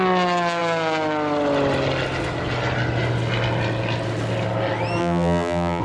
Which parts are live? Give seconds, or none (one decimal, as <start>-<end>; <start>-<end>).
0.0-5.0